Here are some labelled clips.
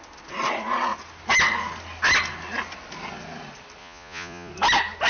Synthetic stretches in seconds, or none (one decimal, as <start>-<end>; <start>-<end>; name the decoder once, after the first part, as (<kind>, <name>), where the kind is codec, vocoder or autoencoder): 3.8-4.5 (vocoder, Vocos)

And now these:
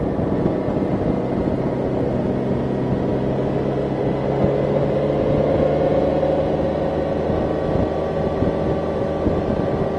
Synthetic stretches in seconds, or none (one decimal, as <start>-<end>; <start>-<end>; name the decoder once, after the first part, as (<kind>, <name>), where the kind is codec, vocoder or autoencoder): none

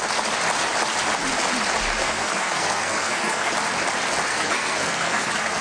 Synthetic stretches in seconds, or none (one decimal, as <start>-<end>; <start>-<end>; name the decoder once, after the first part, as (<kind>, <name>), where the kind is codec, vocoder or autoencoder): 2.0-3.5 (codec, SNAC); 4.3-5.6